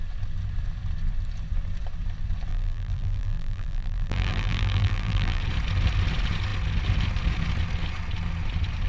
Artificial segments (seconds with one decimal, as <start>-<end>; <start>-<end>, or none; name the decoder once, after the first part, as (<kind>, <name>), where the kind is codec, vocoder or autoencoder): 2.5-5.4 (vocoder, BigVGAN v2)